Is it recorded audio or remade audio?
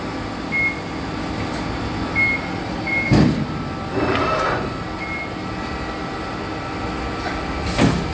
recorded